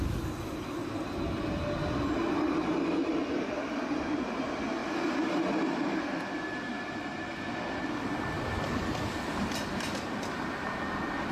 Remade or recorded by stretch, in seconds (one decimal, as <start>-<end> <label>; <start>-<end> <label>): 0.0-11.3 recorded